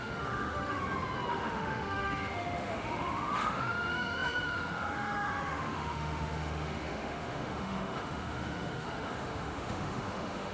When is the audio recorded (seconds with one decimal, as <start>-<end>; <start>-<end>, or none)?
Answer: 0.8-1.3